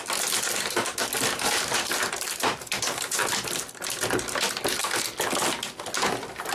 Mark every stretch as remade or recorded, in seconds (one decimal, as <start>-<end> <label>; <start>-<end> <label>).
0.0-1.3 recorded; 1.3-3.0 remade; 3.0-6.5 recorded